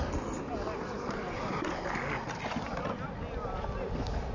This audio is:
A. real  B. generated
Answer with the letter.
A